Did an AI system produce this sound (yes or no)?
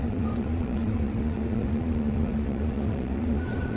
yes